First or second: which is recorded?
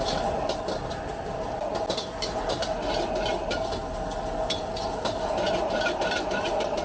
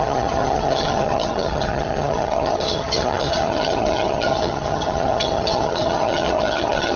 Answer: first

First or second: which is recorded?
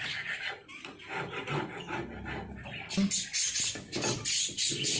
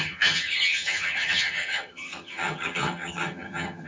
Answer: first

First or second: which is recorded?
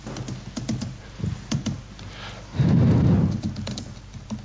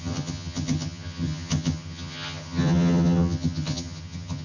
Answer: first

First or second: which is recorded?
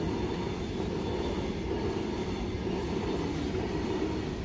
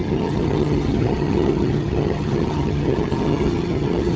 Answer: first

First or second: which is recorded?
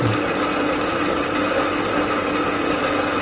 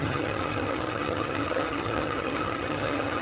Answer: first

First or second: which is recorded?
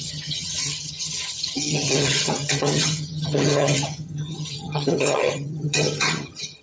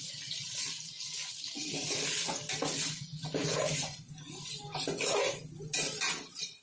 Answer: second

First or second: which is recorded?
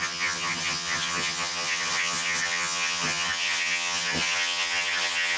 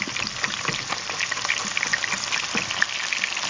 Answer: second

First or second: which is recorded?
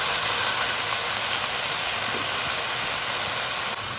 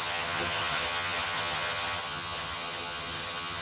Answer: first